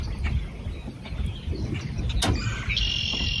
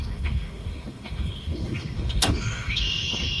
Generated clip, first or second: second